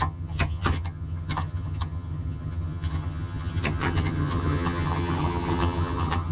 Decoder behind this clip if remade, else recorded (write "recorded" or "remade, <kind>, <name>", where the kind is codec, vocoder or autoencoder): remade, vocoder, HiFi-GAN